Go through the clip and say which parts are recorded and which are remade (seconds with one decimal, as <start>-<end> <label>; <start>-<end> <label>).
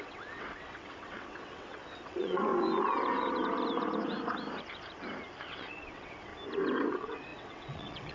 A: 0.0-2.5 remade; 2.5-5.5 recorded; 5.5-6.3 remade; 6.3-6.8 recorded; 6.8-8.1 remade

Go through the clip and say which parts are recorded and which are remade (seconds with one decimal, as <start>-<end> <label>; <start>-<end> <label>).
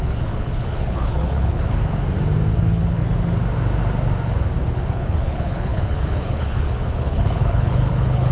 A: 0.0-1.8 remade; 1.8-2.6 recorded; 2.6-3.0 remade; 3.0-4.7 recorded; 4.7-8.3 remade